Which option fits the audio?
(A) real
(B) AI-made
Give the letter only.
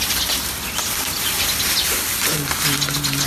A